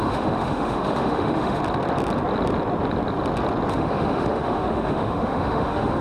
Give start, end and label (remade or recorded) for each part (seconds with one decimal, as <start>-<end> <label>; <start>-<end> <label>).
0.0-1.6 remade; 1.6-3.7 recorded; 3.7-6.0 remade